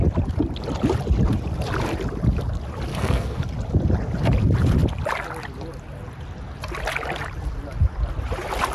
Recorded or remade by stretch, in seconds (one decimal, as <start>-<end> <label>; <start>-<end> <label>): 0.0-2.9 recorded; 2.9-3.4 remade; 3.4-8.7 recorded